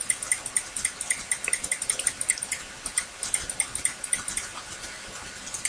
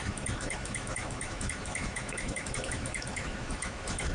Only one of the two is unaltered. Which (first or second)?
first